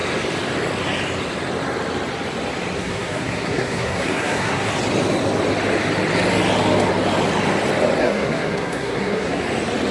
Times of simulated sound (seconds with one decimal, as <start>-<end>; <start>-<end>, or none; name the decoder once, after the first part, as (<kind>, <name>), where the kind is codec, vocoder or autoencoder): 2.8-4.7 (codec, SNAC); 8.0-9.4